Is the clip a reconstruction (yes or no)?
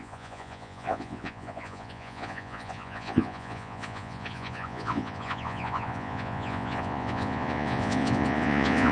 yes